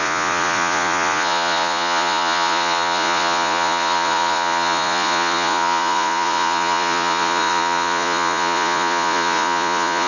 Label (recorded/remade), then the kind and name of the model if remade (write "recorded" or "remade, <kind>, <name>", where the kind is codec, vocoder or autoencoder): remade, vocoder, Vocos